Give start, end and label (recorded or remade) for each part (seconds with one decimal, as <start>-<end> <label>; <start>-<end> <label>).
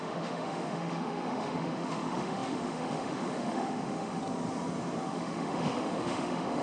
0.0-4.2 remade; 4.2-5.1 recorded; 5.1-6.6 remade